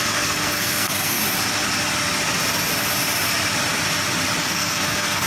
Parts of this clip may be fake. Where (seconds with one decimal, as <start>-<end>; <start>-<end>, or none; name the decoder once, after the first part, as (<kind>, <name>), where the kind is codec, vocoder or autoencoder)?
0.0-1.2 (codec, SNAC); 4.4-5.3